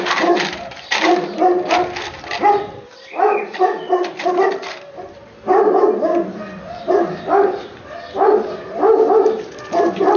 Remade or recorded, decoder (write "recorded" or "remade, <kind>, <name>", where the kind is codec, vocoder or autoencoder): recorded